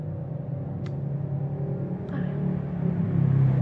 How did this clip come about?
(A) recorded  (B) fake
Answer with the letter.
A